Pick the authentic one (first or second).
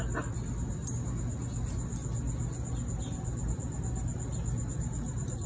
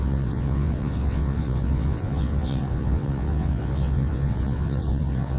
first